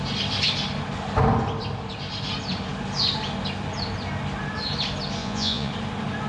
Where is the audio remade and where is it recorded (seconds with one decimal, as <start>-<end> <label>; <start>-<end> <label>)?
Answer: 0.0-5.2 recorded; 5.2-5.7 remade; 5.7-6.3 recorded

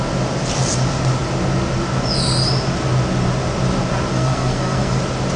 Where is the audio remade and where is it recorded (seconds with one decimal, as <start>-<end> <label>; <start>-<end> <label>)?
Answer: 0.0-4.1 recorded; 4.1-5.0 remade; 5.0-5.4 recorded